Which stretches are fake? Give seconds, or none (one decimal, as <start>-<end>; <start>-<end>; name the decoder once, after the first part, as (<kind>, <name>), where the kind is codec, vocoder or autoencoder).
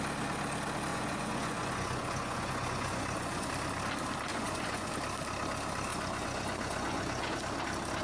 0.9-3.5 (vocoder, Vocos); 4.3-4.9; 5.9-7.4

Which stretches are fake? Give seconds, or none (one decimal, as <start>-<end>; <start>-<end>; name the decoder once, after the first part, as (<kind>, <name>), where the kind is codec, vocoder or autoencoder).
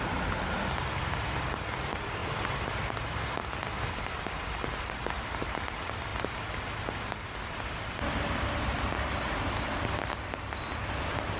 0.0-2.2 (vocoder, BigVGAN v2); 4.0-11.4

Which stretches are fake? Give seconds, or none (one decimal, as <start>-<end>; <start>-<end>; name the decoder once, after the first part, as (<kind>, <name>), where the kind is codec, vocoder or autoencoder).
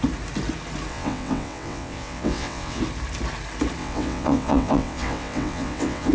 0.9-2.8 (vocoder, WaveNeXt); 3.8-6.1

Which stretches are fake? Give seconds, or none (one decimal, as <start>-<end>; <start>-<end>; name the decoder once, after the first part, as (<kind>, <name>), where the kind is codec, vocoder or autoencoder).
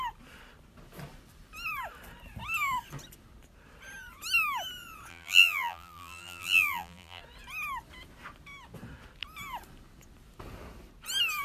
5.1-7.2 (vocoder, BigVGAN v2)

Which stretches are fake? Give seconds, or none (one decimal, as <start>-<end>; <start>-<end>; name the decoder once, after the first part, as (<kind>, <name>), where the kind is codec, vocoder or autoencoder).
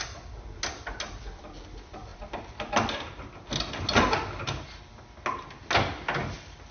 none